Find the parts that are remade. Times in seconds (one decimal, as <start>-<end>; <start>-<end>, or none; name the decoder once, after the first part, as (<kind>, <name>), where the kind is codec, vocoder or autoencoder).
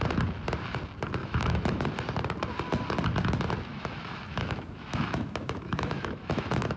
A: 1.2-1.8 (autoencoder, DAC-VAE); 3.7-6.8